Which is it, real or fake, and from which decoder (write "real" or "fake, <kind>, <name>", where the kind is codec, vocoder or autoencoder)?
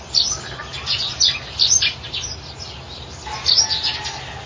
real